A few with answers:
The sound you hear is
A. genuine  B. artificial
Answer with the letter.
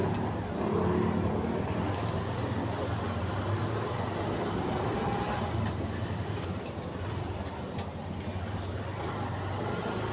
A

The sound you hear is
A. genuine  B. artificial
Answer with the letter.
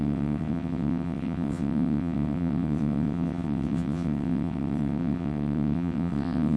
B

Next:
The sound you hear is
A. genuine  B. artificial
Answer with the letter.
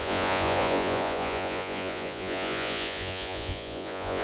B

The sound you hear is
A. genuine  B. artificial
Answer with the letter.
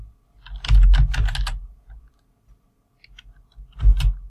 A